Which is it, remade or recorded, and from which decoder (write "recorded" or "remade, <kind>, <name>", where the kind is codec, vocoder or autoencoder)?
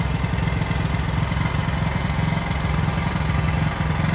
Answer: recorded